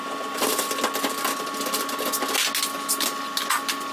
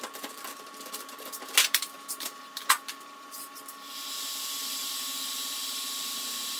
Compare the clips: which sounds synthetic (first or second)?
second